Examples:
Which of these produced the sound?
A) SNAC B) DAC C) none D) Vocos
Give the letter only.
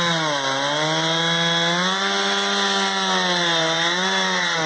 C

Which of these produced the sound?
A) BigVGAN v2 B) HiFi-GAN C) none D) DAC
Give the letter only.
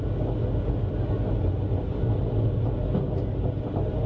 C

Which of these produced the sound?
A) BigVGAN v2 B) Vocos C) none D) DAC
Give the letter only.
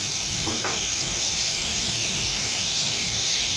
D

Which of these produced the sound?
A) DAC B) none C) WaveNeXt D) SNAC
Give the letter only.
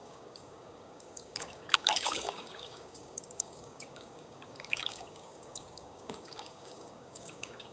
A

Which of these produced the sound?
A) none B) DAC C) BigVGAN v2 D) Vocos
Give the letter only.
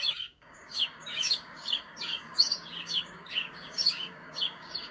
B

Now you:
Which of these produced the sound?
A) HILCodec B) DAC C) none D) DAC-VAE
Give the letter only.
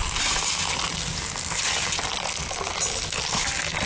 C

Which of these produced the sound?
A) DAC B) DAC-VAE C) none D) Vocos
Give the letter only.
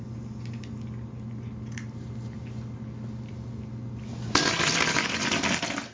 C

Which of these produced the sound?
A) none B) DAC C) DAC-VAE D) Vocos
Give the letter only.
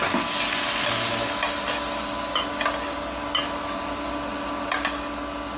A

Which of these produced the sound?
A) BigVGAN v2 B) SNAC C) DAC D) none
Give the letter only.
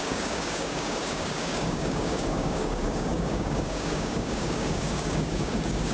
C